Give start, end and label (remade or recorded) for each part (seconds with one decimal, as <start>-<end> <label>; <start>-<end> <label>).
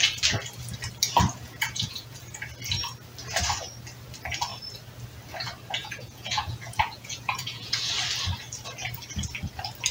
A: 0.0-1.3 recorded; 1.3-2.2 remade; 2.2-5.8 recorded; 5.8-7.9 remade; 7.9-9.9 recorded